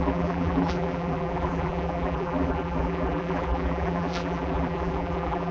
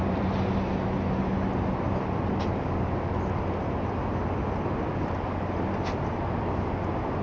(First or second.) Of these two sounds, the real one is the second